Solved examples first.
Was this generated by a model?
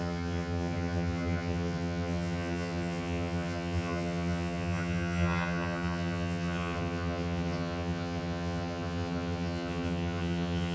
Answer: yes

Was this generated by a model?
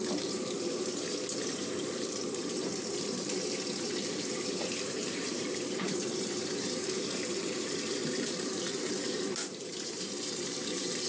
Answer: yes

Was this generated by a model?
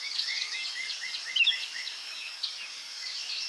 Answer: yes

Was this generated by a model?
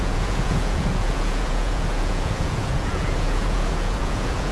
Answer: yes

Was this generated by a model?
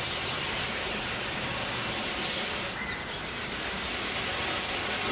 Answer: yes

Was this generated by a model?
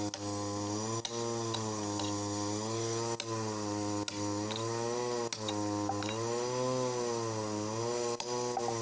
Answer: no